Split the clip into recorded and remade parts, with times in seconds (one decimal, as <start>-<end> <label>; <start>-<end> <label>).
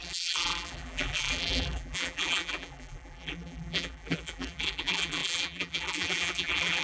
0.0-6.8 remade